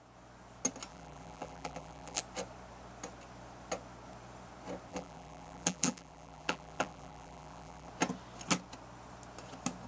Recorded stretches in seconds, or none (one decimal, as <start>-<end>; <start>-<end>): 0.0-0.9; 2.2-4.9; 7.9-9.9